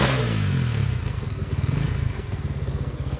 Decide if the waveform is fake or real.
fake